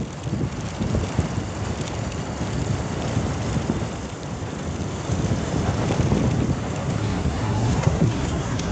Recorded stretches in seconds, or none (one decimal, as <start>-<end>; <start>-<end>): 0.0-6.8